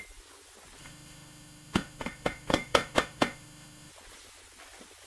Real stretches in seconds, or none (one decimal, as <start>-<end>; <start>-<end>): 0.0-0.8; 3.9-5.1